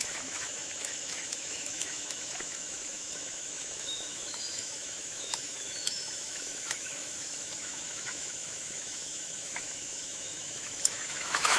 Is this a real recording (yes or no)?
no